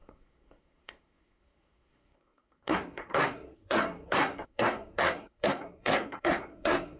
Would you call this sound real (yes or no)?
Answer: no